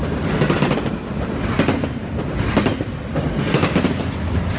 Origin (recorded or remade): recorded